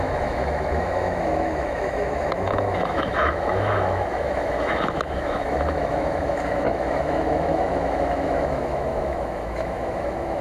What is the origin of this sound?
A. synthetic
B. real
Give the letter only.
A